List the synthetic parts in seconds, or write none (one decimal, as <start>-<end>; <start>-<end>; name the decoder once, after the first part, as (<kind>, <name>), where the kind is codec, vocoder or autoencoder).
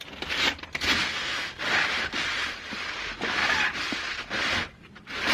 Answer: 1.0-1.6 (codec, SNAC)